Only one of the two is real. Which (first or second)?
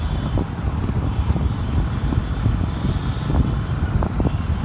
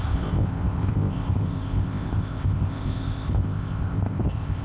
first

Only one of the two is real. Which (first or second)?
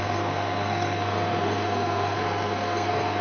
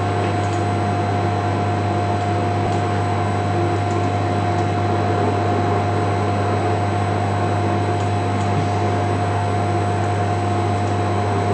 second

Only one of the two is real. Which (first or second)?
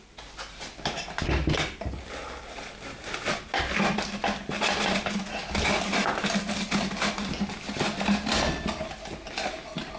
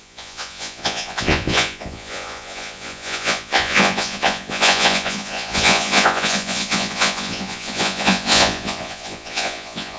first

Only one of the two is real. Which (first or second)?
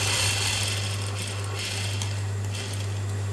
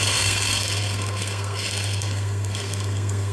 first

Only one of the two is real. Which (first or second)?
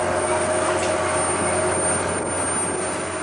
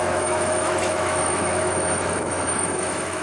first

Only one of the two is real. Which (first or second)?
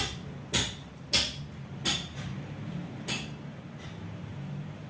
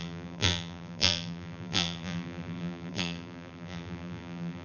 first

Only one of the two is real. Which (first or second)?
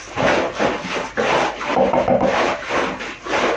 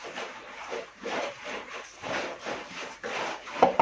first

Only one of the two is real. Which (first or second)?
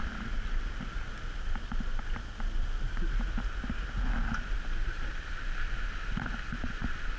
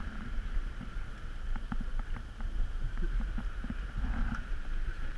first